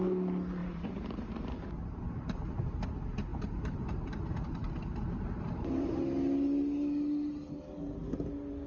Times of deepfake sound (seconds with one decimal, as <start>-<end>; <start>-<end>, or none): 0.6-1.4; 3.3-6.0